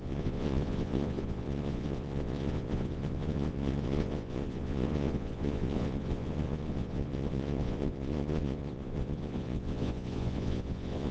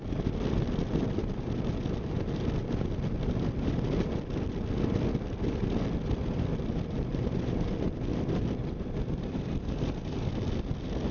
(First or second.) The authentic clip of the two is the second